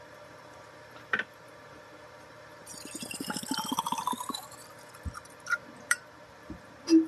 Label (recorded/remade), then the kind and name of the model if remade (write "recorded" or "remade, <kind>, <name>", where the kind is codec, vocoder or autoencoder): remade, vocoder, BigVGAN v2